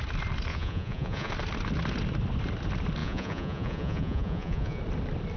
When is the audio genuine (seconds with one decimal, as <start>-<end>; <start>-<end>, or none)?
0.0-0.5; 1.3-3.0; 4.8-5.4